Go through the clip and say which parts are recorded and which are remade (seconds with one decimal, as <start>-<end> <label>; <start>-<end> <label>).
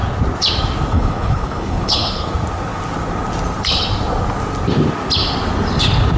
0.0-0.9 recorded; 0.9-2.3 remade; 2.3-6.2 recorded